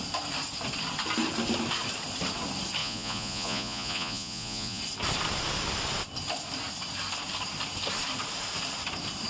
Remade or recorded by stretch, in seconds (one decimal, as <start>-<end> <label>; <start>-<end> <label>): 0.0-2.8 recorded; 2.8-4.8 remade; 4.8-9.3 recorded